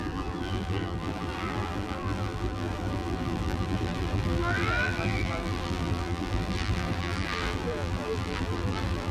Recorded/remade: remade